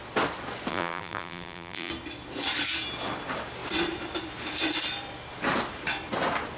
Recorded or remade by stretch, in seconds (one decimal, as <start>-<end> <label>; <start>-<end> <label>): 0.0-0.7 recorded; 0.7-1.9 remade; 1.9-6.6 recorded